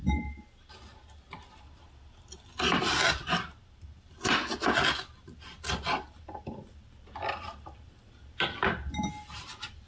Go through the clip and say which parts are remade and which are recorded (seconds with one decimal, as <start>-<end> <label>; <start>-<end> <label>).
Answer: 0.0-9.9 recorded